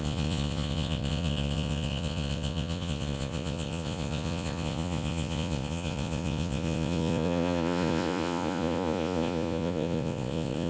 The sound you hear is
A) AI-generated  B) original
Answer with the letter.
A